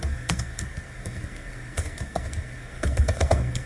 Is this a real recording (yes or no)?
no